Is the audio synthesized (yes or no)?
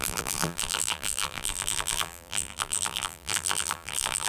yes